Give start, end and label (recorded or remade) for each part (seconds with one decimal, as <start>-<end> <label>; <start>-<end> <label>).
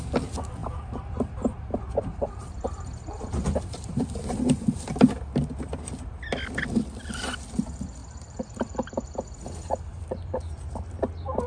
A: 0.0-0.6 recorded; 0.6-4.8 remade; 4.8-8.0 recorded; 8.0-8.9 remade; 8.9-9.9 recorded; 9.9-10.9 remade; 10.9-11.5 recorded